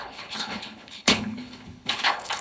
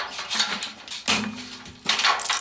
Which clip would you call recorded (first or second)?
second